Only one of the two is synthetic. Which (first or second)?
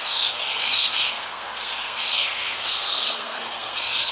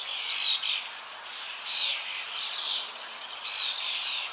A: first